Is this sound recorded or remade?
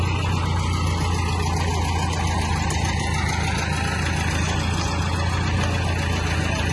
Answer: recorded